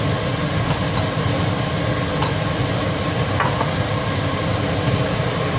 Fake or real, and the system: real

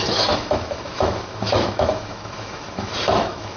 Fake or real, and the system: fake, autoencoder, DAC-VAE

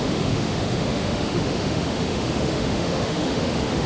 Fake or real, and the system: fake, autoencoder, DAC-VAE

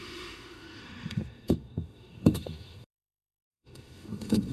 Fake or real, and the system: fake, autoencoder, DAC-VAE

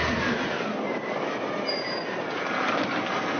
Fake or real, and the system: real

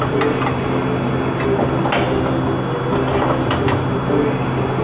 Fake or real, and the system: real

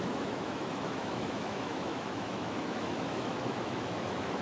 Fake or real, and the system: fake, autoencoder, DAC-VAE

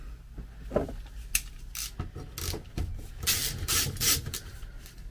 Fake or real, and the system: real